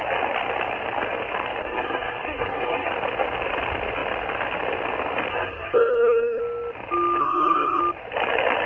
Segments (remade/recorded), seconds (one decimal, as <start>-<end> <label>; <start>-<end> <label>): 0.0-1.6 recorded; 1.6-2.9 remade; 2.9-5.3 recorded; 5.3-6.4 remade; 6.4-7.2 recorded; 7.2-7.8 remade; 7.8-8.7 recorded

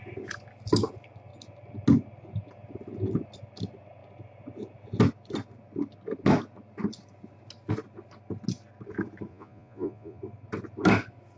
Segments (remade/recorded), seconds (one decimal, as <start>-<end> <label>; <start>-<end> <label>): 0.0-9.3 recorded; 9.3-10.2 remade; 10.2-11.4 recorded

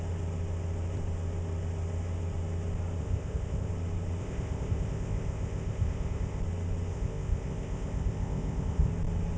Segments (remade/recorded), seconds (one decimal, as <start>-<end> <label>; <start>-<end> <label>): 0.0-3.0 recorded; 3.0-3.7 remade; 3.7-4.2 recorded; 4.2-6.4 remade; 6.4-6.9 recorded; 6.9-8.9 remade; 8.9-9.4 recorded

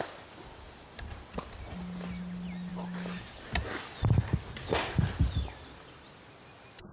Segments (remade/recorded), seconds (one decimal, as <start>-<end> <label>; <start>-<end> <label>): 0.0-6.9 recorded

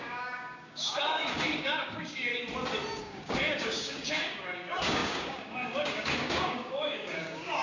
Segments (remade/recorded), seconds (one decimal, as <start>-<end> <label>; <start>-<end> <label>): 0.0-2.3 remade; 2.3-3.0 recorded; 3.0-7.6 remade

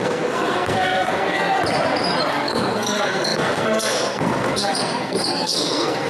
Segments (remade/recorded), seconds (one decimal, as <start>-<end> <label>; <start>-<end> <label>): 0.0-1.6 remade; 1.6-2.3 recorded; 2.3-6.1 remade

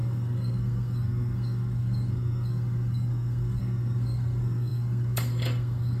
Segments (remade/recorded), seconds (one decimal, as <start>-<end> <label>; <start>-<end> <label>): 0.0-6.0 remade

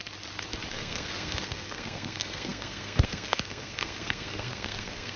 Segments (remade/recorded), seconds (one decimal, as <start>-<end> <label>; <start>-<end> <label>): 0.0-0.7 recorded; 0.7-5.2 remade